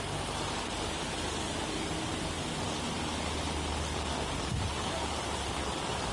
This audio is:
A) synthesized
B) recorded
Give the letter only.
B